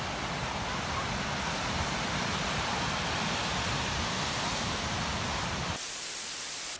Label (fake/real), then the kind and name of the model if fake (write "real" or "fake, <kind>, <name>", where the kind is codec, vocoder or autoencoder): real